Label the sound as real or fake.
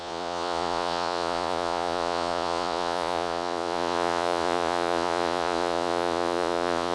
fake